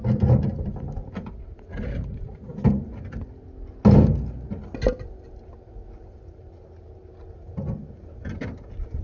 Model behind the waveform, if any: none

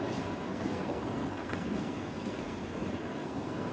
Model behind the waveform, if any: codec, SNAC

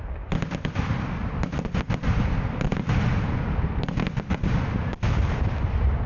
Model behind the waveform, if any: none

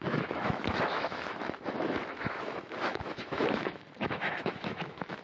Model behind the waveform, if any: autoencoder, DAC-VAE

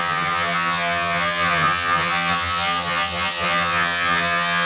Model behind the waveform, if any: vocoder, HiFi-GAN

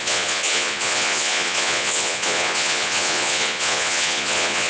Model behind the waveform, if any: vocoder, Vocos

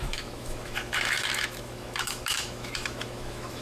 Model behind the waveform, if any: autoencoder, DAC-VAE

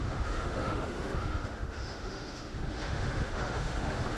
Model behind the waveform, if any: autoencoder, DAC-VAE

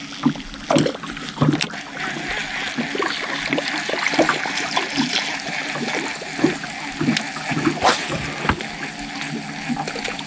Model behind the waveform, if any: none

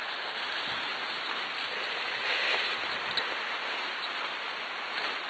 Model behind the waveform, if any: none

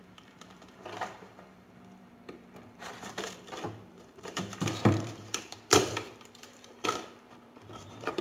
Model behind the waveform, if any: vocoder, BigVGAN v2